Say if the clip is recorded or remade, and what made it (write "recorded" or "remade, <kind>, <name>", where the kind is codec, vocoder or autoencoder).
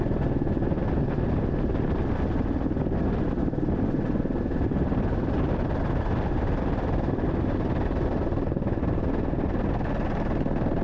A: recorded